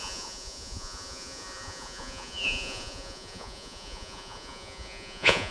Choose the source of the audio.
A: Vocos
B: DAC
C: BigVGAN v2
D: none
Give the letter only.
A